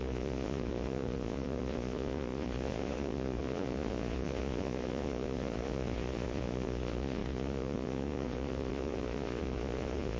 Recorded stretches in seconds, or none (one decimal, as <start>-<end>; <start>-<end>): none